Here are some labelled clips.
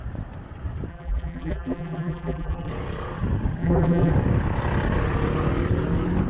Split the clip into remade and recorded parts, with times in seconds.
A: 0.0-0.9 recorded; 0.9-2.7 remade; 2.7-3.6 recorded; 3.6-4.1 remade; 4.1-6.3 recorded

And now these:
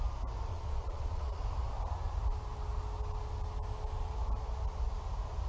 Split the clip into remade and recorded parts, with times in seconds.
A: 0.0-0.5 recorded; 0.5-1.4 remade; 1.4-5.5 recorded

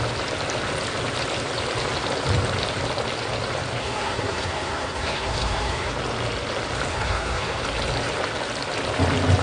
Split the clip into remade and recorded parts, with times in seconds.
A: 0.0-3.8 recorded; 3.8-5.9 remade; 5.9-6.9 recorded; 6.9-7.6 remade; 7.6-9.4 recorded

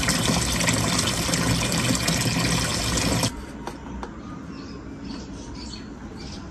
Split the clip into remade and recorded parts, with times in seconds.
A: 0.0-6.5 recorded